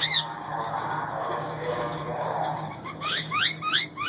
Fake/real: fake